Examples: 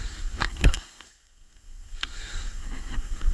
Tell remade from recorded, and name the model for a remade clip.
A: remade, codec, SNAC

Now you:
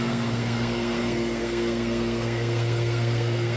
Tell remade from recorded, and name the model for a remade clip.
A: remade, codec, SNAC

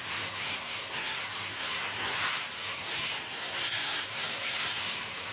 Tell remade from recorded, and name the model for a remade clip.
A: remade, codec, SNAC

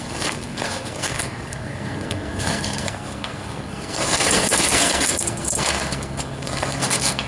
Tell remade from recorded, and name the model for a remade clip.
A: remade, codec, SNAC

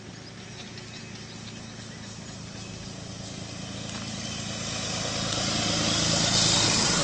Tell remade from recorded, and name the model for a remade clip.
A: recorded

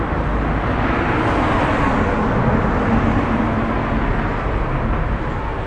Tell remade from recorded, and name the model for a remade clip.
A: recorded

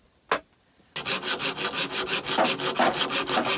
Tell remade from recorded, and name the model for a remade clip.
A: recorded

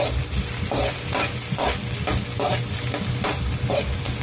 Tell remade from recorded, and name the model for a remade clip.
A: recorded